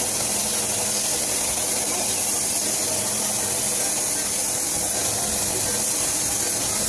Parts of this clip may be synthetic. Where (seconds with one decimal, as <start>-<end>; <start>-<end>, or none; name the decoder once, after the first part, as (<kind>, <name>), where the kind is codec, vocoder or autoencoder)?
none